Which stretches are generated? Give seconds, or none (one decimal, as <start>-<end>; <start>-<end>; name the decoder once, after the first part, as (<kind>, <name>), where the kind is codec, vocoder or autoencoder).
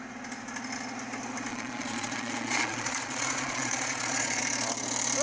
1.5-4.4 (vocoder, Vocos)